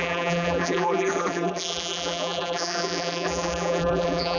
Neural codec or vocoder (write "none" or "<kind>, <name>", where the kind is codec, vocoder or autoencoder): vocoder, BigVGAN v2